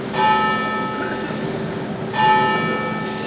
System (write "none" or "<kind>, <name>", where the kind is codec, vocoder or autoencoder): none